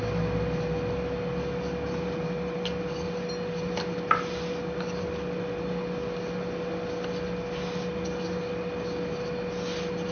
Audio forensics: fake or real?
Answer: real